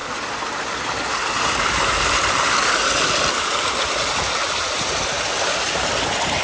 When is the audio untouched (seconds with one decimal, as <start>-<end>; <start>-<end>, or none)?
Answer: 0.0-6.4